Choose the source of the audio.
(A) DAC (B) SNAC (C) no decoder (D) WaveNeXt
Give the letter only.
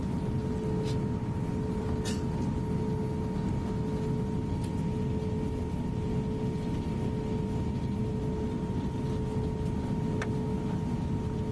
C